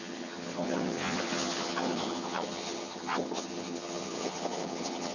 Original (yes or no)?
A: no